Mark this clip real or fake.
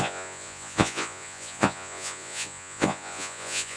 fake